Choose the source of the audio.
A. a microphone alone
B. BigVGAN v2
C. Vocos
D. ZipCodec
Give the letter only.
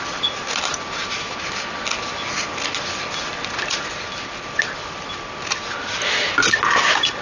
A